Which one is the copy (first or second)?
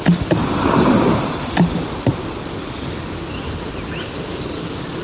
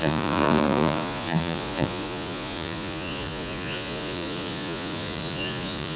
second